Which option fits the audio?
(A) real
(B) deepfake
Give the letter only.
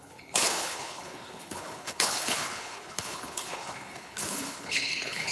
B